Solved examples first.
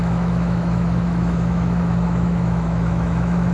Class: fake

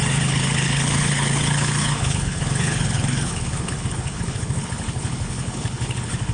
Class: fake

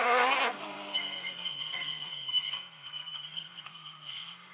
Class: fake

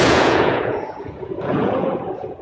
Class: fake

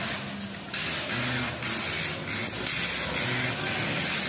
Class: real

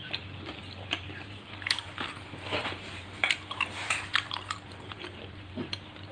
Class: fake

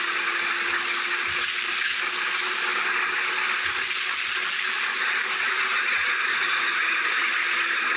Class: real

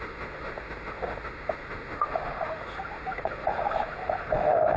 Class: fake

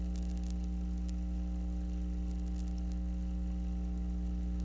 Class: real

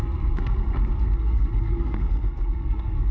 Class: fake